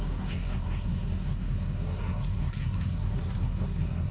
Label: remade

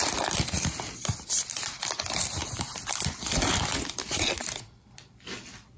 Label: remade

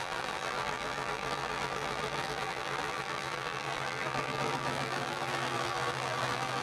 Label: remade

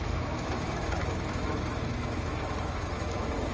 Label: remade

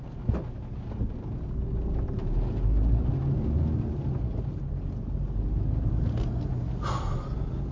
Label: recorded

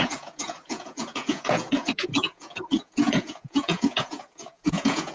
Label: remade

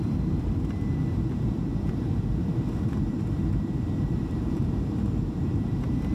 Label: remade